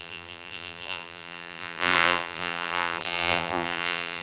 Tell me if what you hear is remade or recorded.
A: remade